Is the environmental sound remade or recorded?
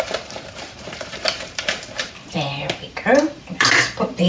remade